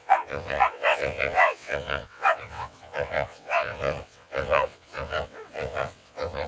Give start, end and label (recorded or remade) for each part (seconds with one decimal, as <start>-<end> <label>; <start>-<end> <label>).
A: 0.0-6.5 remade